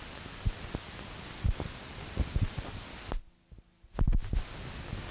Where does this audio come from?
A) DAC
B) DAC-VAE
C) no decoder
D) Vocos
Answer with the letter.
C